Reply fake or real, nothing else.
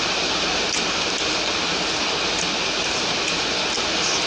real